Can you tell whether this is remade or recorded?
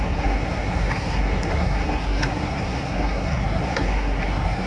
remade